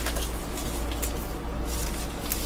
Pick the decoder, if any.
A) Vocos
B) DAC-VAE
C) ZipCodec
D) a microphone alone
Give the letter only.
D